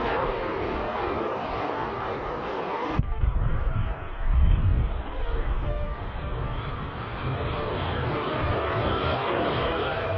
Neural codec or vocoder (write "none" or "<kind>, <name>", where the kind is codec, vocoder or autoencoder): codec, DAC